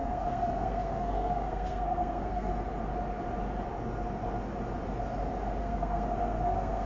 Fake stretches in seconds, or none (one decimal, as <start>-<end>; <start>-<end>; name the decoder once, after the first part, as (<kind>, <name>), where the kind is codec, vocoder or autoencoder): 0.0-2.5 (codec, SNAC); 5.6-6.9